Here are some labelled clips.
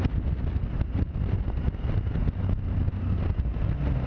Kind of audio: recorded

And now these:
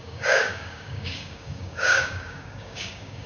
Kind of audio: remade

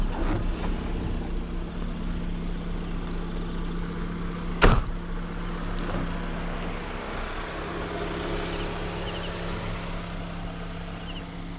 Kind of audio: recorded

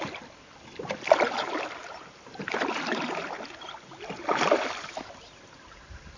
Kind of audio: remade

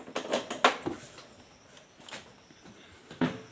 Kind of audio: recorded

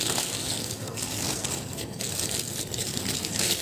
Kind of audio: remade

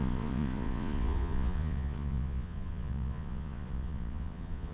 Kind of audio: remade